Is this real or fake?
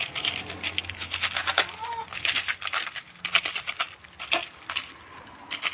real